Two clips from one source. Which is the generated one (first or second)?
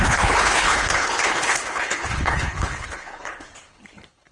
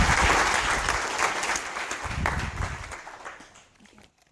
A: first